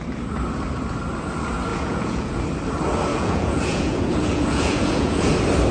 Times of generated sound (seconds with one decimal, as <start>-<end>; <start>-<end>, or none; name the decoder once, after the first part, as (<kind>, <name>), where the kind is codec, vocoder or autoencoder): 1.7-2.4 (vocoder, Vocos); 3.1-5.3